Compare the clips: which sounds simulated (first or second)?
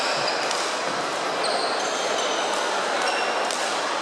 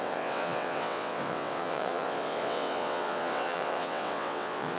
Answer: second